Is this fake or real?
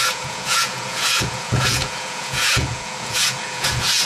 fake